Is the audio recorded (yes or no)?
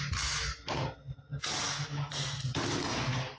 yes